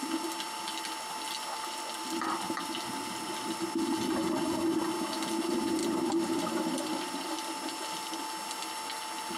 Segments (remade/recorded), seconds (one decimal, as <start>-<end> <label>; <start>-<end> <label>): 0.0-5.8 recorded; 5.8-7.4 remade; 7.4-9.4 recorded